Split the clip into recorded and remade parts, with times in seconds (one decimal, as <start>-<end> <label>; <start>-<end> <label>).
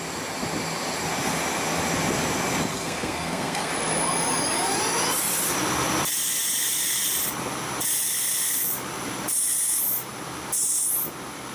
0.0-2.7 recorded; 2.7-3.7 remade; 3.7-11.5 recorded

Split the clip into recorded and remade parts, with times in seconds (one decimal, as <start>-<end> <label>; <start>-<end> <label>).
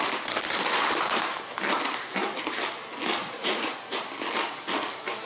0.0-3.2 recorded; 3.2-3.8 remade; 3.8-5.3 recorded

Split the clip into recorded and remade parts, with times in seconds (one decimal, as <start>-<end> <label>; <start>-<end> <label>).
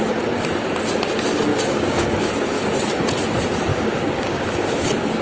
0.0-1.5 recorded; 1.5-2.3 remade; 2.3-3.7 recorded; 3.7-4.6 remade; 4.6-5.2 recorded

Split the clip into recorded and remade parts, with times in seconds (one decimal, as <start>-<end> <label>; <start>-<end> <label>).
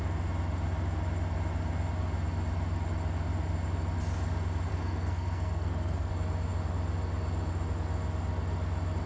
0.0-4.7 recorded; 4.7-6.1 remade; 6.1-9.1 recorded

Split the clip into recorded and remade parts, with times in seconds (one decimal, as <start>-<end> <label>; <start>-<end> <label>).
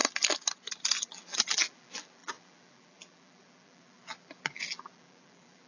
0.0-1.0 recorded; 1.0-5.7 remade